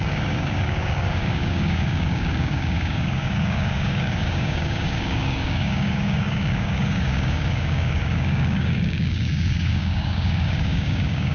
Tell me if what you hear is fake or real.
fake